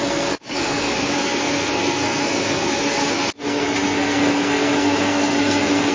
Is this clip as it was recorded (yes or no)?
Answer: no